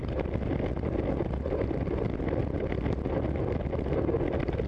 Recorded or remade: recorded